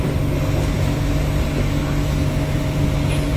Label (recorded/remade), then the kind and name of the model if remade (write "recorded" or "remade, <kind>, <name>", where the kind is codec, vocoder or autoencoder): recorded